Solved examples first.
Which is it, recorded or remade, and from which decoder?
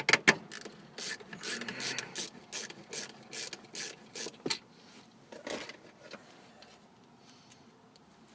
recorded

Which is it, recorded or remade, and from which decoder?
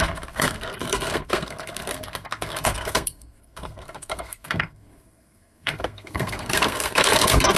remade, codec, SNAC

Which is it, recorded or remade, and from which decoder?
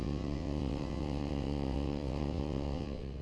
remade, vocoder, WaveNeXt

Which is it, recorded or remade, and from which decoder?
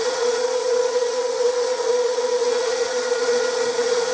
remade, vocoder, Vocos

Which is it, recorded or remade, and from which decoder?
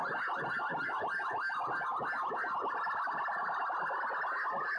recorded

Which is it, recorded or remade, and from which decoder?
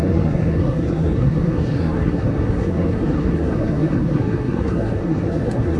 remade, codec, SNAC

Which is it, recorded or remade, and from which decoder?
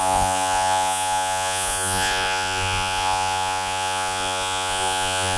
remade, vocoder, Vocos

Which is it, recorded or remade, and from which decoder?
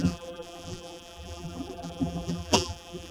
remade, vocoder, BigVGAN v2